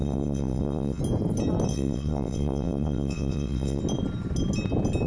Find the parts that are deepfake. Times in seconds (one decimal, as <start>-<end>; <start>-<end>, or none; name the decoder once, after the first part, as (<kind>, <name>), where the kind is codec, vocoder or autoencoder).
0.0-1.0 (vocoder, WaveNeXt); 1.7-3.8